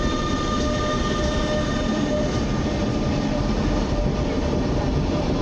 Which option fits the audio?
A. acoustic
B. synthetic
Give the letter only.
B